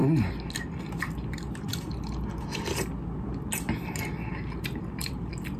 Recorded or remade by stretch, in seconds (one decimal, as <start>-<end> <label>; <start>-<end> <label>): 0.0-0.9 recorded; 0.9-1.7 remade; 1.7-5.1 recorded; 5.1-5.6 remade